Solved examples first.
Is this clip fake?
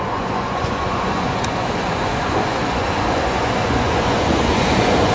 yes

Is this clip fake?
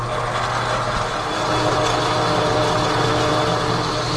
no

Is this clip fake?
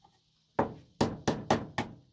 no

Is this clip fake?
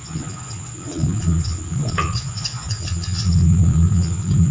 yes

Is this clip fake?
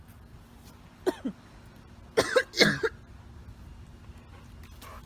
no